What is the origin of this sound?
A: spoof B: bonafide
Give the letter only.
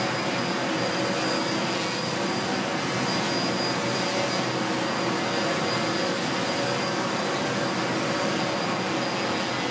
B